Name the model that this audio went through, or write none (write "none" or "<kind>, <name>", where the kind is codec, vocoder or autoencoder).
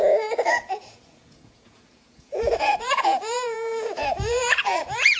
vocoder, Vocos